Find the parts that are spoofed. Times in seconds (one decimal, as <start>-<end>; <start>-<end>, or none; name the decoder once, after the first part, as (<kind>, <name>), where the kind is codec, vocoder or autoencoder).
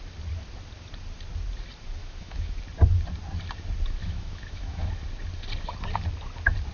2.0-2.6 (autoencoder, DAC-VAE); 4.0-4.9